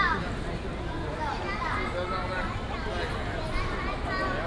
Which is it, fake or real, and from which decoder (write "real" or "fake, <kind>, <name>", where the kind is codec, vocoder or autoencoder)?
real